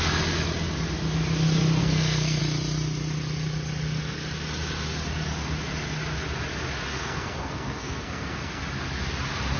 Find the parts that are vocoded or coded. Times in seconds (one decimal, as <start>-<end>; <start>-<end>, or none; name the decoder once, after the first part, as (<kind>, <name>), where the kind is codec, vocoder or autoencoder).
1.8-2.4 (codec, SNAC); 6.9-8.6